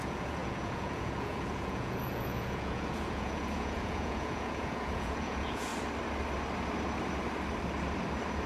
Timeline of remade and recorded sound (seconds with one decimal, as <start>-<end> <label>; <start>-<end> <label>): 0.0-5.7 remade; 5.7-8.5 recorded